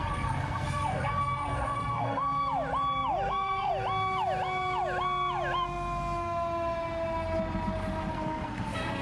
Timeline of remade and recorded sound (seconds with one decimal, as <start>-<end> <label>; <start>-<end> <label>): 0.0-2.2 remade; 2.2-3.3 recorded; 3.3-3.7 remade; 3.7-8.1 recorded; 8.1-9.0 remade